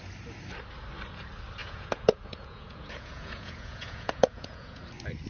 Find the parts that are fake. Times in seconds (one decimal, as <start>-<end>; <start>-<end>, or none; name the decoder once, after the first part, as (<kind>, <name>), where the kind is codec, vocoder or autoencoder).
1.6-4.8 (vocoder, Vocos)